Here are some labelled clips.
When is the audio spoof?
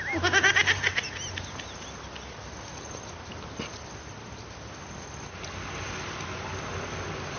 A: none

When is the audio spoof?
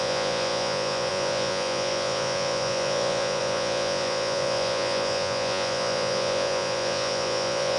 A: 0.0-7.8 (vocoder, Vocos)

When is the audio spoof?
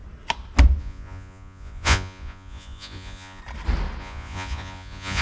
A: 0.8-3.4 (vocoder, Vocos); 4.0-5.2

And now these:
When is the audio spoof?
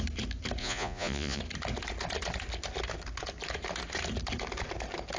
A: 0.6-1.4 (vocoder, Vocos)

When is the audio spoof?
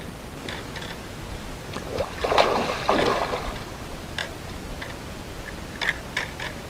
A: none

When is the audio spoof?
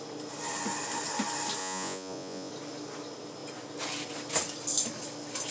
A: 1.6-2.5 (vocoder, Vocos)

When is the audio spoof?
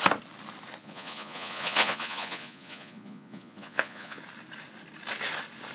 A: 0.8-4.2 (vocoder, Vocos)